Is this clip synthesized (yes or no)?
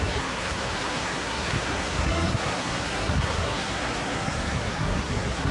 yes